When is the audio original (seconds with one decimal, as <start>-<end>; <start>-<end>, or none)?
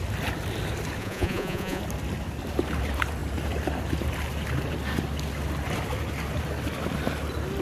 0.0-1.0; 1.8-7.6